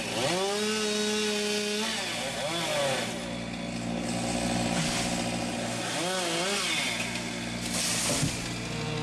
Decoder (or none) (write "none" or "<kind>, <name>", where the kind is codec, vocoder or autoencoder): none